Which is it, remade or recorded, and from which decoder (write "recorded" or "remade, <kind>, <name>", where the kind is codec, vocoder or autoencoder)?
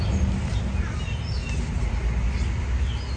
recorded